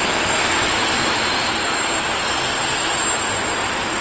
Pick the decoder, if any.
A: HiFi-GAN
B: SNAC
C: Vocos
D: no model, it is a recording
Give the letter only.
D